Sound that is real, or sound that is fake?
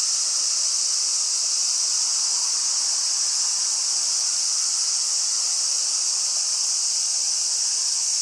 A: real